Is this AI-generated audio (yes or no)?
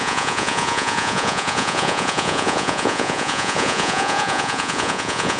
yes